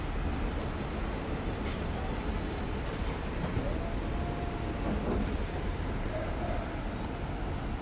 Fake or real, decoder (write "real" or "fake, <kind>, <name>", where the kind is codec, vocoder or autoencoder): real